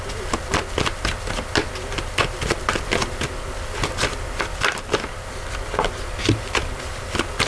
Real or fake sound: real